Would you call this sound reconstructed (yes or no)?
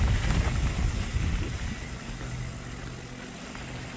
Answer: no